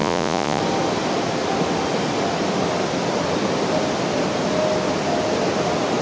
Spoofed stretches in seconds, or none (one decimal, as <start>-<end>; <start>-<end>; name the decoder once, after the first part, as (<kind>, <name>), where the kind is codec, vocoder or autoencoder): 0.0-0.6 (vocoder, Vocos)